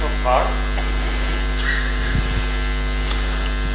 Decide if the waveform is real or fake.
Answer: real